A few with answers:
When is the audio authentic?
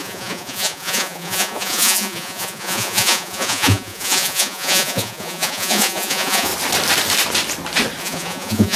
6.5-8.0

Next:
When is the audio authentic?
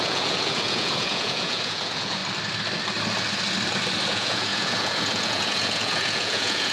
2.2-4.0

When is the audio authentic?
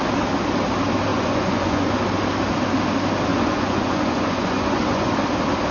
0.0-1.1; 1.9-3.3; 5.1-5.7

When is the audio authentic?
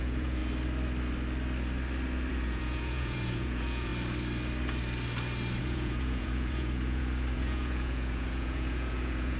0.4-2.3; 3.9-5.6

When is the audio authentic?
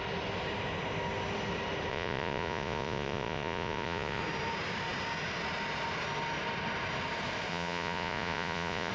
0.0-1.9; 4.2-7.5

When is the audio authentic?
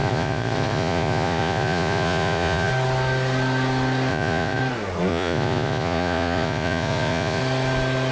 2.7-4.1; 4.6-5.1; 7.4-8.1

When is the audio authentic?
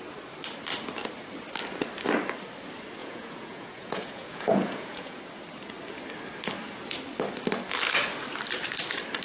0.0-3.0; 5.2-9.2